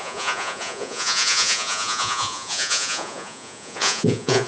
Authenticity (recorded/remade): remade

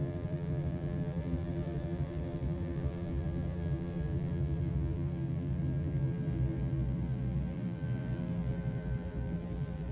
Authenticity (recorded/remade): remade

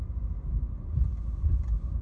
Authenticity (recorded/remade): remade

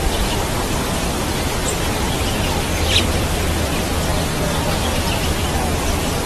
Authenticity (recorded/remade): remade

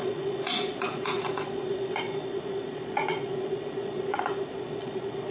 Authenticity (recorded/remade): remade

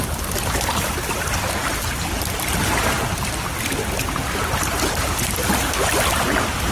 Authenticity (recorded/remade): recorded